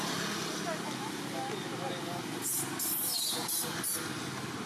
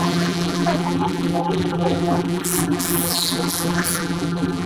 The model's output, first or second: second